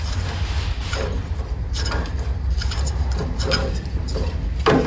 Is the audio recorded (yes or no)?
yes